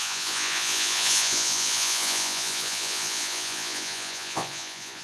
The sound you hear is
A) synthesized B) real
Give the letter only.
A